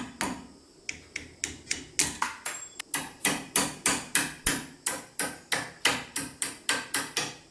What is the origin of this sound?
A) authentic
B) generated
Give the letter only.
A